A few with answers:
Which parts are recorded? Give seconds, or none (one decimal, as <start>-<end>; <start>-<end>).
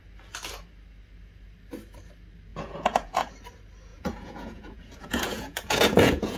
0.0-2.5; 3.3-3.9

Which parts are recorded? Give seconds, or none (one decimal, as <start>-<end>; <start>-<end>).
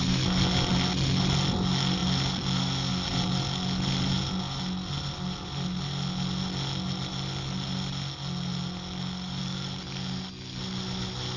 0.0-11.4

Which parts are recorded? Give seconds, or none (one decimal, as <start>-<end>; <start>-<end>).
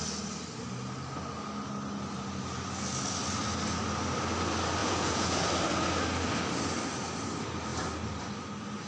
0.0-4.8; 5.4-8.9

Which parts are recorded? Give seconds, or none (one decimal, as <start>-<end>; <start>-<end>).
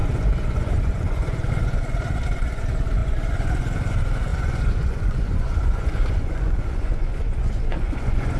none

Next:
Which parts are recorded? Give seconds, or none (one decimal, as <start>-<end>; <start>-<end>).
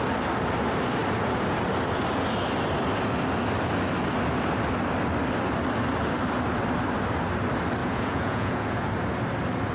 0.0-7.8; 8.9-9.7